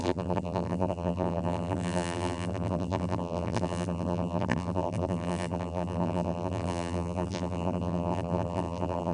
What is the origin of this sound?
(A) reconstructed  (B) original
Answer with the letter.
A